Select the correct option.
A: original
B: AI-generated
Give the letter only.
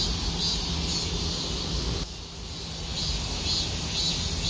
A